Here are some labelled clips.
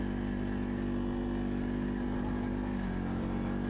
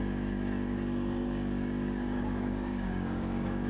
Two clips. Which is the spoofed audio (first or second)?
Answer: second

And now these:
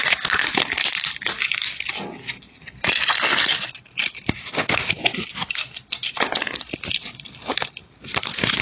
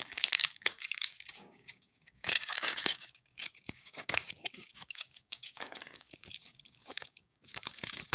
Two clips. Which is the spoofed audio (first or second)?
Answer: second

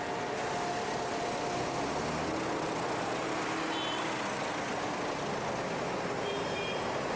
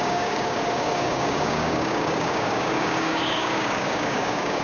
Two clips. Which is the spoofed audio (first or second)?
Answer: second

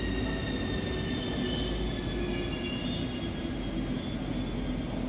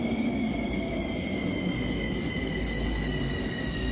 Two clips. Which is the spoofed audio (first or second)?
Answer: second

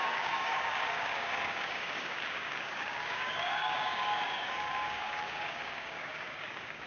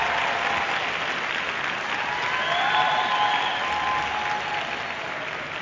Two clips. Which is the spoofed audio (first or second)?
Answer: first